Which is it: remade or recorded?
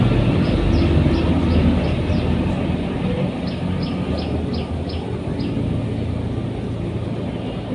recorded